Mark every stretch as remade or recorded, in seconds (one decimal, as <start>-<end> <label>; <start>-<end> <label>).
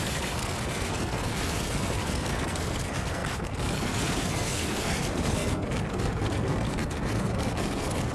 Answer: 0.0-8.1 remade